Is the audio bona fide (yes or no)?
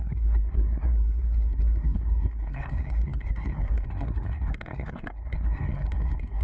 no